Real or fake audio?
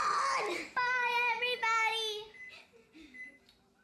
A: real